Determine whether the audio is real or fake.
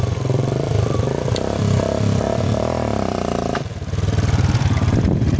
fake